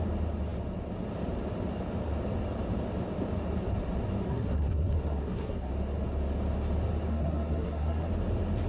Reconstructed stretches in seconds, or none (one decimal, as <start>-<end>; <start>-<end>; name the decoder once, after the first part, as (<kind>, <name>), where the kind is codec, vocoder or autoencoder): 4.3-5.7 (codec, SNAC); 7.1-8.1